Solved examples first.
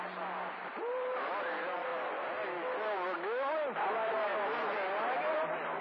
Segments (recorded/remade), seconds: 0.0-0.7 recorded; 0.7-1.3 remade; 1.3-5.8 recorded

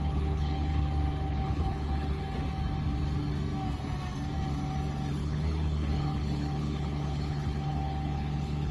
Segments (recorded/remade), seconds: 0.0-0.7 remade; 0.7-1.3 recorded; 1.3-2.2 remade; 2.2-5.1 recorded; 5.1-8.7 remade

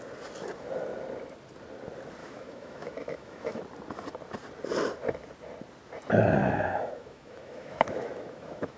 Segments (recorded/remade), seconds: 0.0-2.2 recorded; 2.2-3.6 remade; 3.6-6.4 recorded; 6.4-8.8 remade

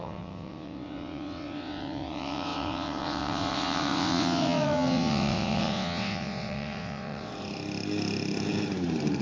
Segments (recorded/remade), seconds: 0.0-7.3 remade; 7.3-9.2 recorded

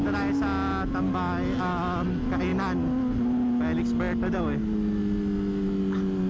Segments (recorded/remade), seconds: 0.0-6.3 recorded

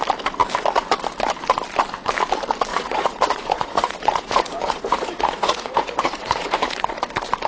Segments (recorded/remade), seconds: 0.0-2.7 recorded; 2.7-6.9 remade; 6.9-7.5 recorded

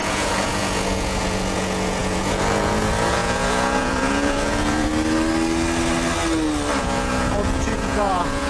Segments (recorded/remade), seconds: 0.0-4.9 remade; 4.9-6.8 recorded; 6.8-8.5 remade